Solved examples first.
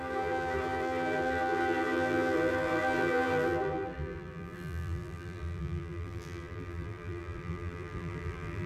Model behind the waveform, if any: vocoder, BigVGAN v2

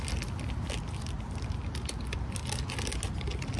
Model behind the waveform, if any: none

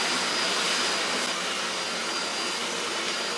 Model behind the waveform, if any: none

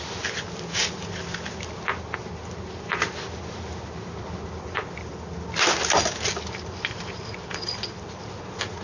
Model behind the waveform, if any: none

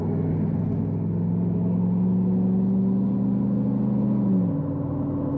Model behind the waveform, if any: none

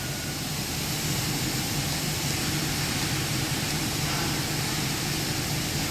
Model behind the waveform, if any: none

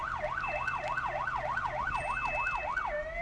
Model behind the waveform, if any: none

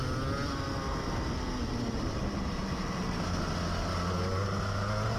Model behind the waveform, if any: none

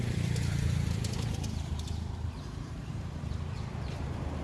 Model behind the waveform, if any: vocoder, BigVGAN v2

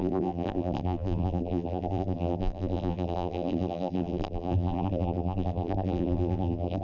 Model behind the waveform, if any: vocoder, BigVGAN v2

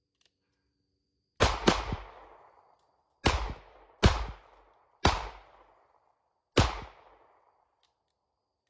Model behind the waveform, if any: none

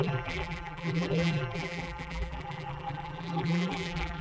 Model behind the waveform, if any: vocoder, BigVGAN v2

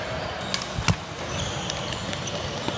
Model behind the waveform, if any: none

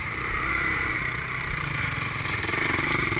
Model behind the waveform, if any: vocoder, BigVGAN v2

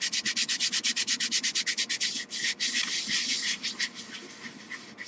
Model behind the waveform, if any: none